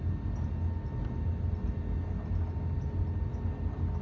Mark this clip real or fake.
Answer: real